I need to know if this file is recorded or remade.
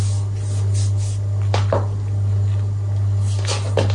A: recorded